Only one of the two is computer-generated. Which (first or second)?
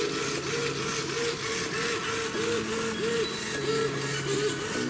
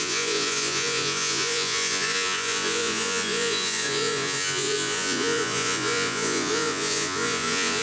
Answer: second